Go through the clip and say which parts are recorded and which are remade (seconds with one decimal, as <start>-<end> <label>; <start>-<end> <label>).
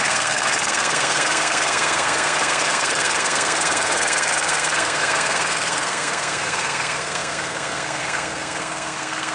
0.0-9.3 remade